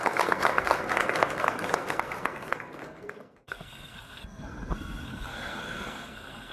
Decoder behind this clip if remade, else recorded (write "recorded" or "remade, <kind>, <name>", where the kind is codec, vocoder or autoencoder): remade, codec, SNAC